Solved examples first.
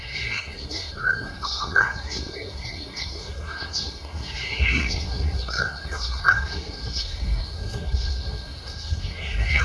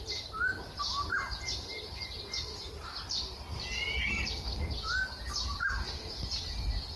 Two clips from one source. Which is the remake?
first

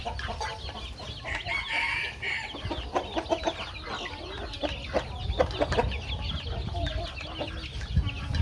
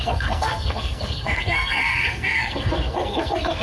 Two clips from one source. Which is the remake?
second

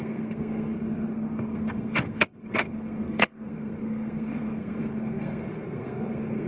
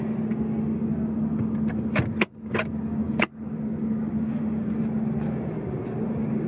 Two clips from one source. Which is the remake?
first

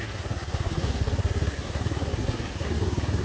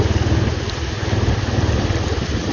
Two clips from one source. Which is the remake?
first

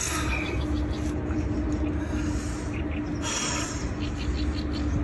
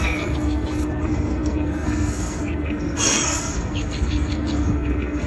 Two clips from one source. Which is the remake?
second